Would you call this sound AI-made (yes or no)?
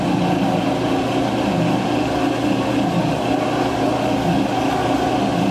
no